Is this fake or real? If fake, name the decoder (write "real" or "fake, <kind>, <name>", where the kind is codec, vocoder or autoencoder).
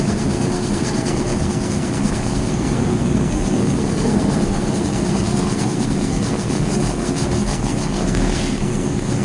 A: fake, codec, SNAC